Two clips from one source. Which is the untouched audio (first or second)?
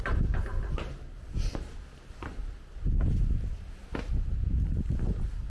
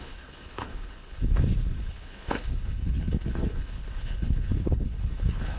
first